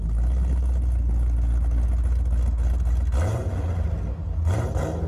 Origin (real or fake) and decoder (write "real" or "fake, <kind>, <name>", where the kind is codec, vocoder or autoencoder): real